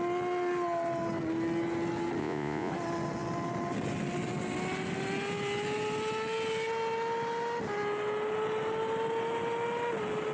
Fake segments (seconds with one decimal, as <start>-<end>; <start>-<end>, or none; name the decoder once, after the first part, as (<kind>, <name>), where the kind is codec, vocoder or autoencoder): 2.2-2.7 (vocoder, Vocos)